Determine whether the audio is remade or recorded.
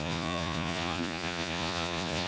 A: remade